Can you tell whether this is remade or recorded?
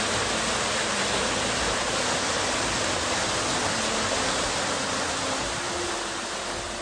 recorded